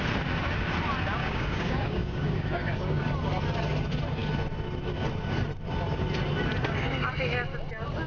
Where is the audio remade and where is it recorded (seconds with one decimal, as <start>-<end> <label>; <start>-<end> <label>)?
0.0-1.2 recorded; 1.2-3.0 remade; 3.0-8.1 recorded